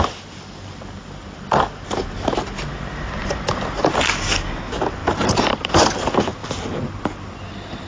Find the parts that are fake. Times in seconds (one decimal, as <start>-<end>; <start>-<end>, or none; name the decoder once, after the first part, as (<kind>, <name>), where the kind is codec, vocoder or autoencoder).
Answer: 3.2-3.8 (vocoder, BigVGAN v2); 5.0-5.7